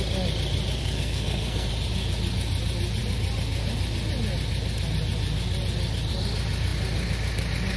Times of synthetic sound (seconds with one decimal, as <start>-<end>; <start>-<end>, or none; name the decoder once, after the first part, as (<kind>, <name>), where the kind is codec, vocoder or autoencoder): 0.8-1.7 (codec, SNAC)